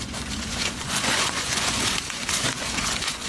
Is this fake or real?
fake